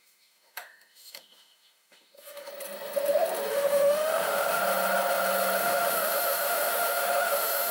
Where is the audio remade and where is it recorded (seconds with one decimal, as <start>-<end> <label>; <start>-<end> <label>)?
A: 0.0-2.5 remade; 2.5-3.5 recorded; 3.5-4.6 remade; 4.6-5.6 recorded; 5.6-7.7 remade